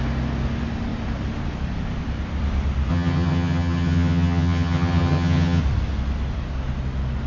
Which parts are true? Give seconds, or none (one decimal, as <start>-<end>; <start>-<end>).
0.0-2.9; 5.6-7.3